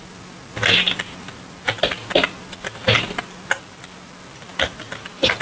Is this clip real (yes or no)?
yes